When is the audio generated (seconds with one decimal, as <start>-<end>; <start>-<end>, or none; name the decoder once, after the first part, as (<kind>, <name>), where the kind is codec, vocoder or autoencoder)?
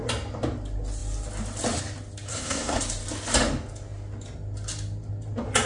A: 2.3-2.8 (codec, SNAC)